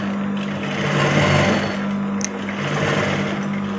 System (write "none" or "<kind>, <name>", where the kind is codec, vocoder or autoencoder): none